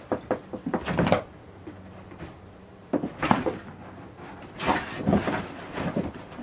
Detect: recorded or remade recorded